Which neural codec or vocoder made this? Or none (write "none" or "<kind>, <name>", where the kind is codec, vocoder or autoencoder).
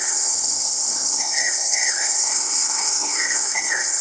codec, SNAC